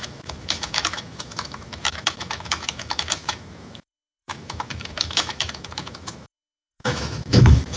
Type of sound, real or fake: fake